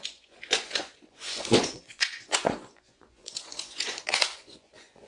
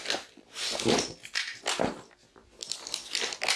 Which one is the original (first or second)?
second